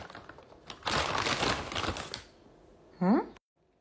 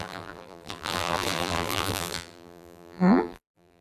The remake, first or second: second